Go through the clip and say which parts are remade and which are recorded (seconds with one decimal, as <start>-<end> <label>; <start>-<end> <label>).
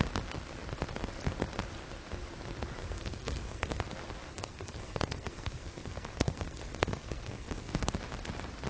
0.0-2.8 recorded; 2.8-3.8 remade; 3.8-4.3 recorded; 4.3-7.9 remade; 7.9-8.7 recorded